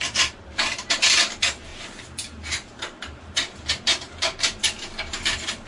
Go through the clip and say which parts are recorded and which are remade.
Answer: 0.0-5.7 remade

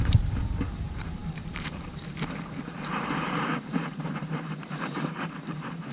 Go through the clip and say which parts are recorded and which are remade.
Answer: 0.0-5.9 remade

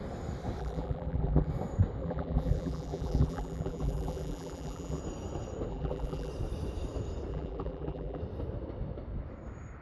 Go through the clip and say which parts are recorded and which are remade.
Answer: 0.0-0.6 recorded; 0.6-1.5 remade; 1.5-2.0 recorded; 2.0-5.0 remade; 5.0-5.7 recorded; 5.7-6.3 remade; 6.3-7.3 recorded; 7.3-8.2 remade; 8.2-9.8 recorded

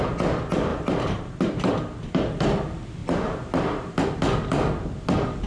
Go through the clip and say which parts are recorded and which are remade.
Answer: 0.0-0.7 recorded; 0.7-1.7 remade; 1.7-3.0 recorded; 3.0-3.9 remade; 3.9-5.5 recorded

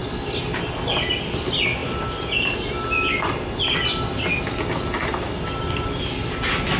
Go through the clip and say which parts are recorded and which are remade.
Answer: 0.0-6.8 recorded